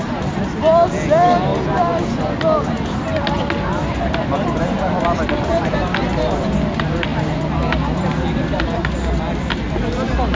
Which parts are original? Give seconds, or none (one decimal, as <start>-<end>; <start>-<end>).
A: 0.0-10.4